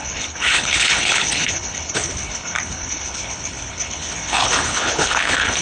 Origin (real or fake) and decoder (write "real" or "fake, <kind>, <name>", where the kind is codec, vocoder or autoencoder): fake, codec, HILCodec